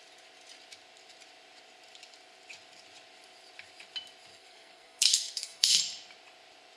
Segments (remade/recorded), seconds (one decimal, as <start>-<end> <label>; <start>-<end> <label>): 0.0-4.3 recorded; 4.3-5.8 remade; 5.8-6.8 recorded

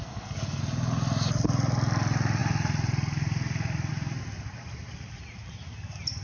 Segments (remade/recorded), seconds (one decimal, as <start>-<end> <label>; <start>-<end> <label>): 0.0-0.6 remade; 0.6-6.2 recorded

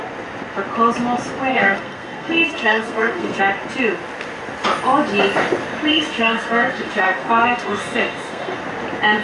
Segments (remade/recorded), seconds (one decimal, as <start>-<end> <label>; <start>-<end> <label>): 0.0-1.5 recorded; 1.5-3.4 remade; 3.4-5.9 recorded; 5.9-8.6 remade; 8.6-9.2 recorded